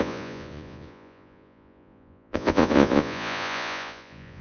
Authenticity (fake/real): fake